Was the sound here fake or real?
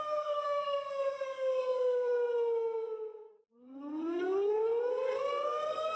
fake